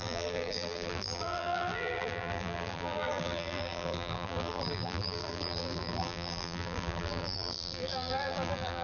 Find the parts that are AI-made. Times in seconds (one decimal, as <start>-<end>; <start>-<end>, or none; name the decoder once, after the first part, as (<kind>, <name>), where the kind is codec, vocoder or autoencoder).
0.0-8.8 (vocoder, BigVGAN v2)